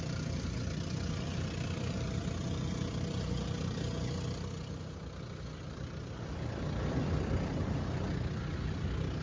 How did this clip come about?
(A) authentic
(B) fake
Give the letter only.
A